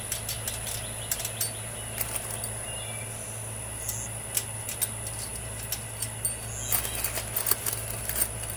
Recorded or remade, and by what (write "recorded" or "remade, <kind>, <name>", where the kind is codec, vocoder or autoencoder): recorded